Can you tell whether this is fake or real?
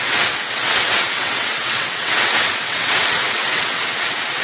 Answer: fake